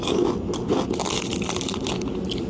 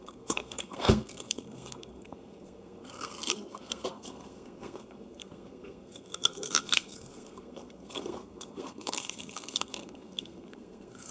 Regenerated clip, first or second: second